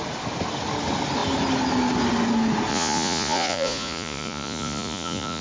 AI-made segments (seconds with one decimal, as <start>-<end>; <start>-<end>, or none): 2.7-5.4